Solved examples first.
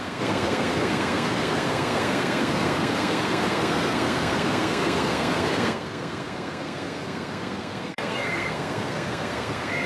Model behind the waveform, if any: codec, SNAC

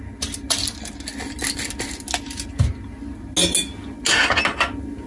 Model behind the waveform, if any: none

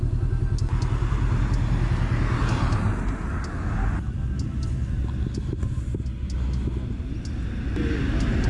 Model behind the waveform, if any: none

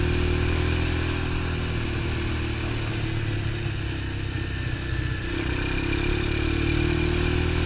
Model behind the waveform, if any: none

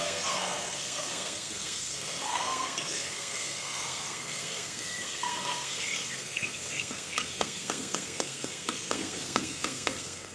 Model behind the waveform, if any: codec, SNAC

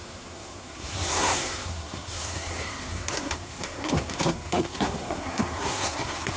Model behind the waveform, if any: codec, SNAC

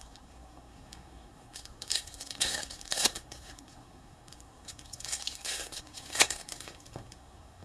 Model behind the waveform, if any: codec, SNAC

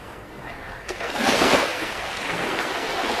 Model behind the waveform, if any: codec, SNAC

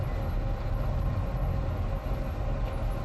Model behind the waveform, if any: none